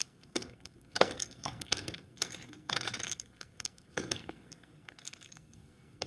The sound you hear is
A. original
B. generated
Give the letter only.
B